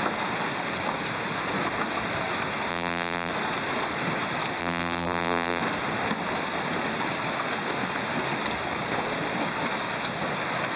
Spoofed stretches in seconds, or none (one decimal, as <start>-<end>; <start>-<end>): 2.7-3.3; 4.6-5.6